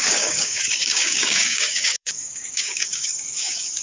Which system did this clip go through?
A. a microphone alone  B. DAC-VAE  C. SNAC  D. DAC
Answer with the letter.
D